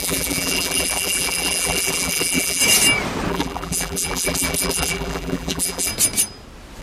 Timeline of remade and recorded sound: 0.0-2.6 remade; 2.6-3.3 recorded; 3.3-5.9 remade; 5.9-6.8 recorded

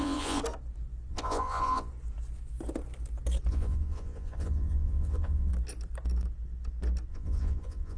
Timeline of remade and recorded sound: 0.0-0.4 remade; 0.4-1.1 recorded; 1.1-1.9 remade; 1.9-3.5 recorded; 3.5-5.5 remade; 5.5-7.1 recorded; 7.1-8.0 remade

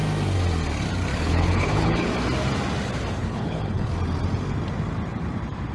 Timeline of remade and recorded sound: 0.0-1.1 recorded; 1.1-2.1 remade; 2.1-3.2 recorded; 3.2-3.9 remade; 3.9-5.7 recorded

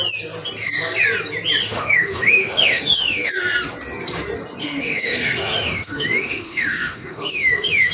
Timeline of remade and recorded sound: 0.0-1.6 recorded; 1.6-3.3 remade; 3.3-4.6 recorded; 4.6-7.9 remade

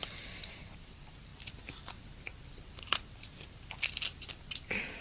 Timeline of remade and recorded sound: 0.0-5.0 remade

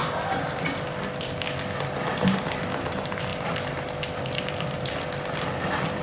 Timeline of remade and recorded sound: 0.0-6.0 recorded

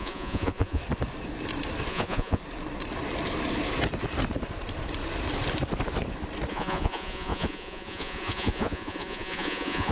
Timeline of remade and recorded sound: 0.0-0.8 remade; 0.8-1.9 recorded; 1.9-2.4 remade; 2.4-6.5 recorded; 6.5-9.9 remade

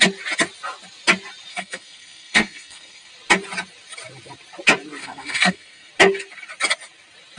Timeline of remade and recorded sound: 0.0-1.5 recorded; 1.5-3.1 remade; 3.1-5.0 recorded; 5.0-5.9 remade; 5.9-7.4 recorded